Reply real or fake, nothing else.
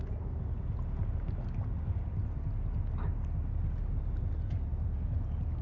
real